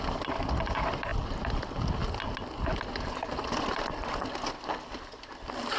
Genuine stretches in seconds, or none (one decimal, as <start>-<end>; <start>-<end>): 0.0-5.8